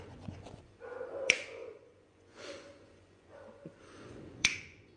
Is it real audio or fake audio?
fake